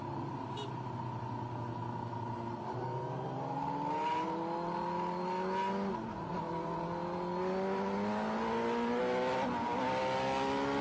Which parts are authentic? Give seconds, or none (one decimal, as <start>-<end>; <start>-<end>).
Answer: 0.0-10.8